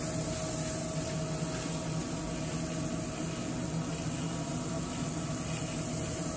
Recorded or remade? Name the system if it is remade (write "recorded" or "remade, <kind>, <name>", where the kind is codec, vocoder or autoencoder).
recorded